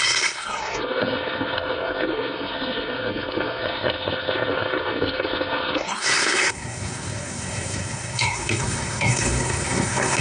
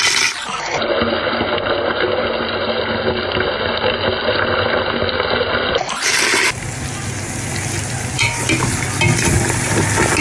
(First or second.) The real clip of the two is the second